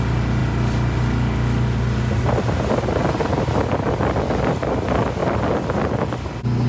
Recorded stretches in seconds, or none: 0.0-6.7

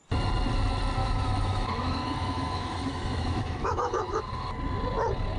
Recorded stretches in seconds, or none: 0.0-1.0; 4.2-5.4